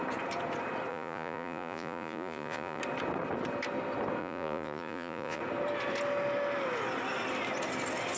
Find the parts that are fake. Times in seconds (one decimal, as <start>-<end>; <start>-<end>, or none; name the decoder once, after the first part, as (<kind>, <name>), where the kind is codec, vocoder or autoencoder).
0.9-2.8 (vocoder, Vocos); 4.2-5.4